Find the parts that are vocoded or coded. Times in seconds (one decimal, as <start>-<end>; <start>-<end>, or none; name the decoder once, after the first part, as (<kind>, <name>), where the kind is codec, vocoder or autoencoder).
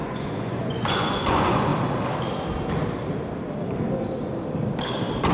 0.0-1.7 (vocoder, Vocos)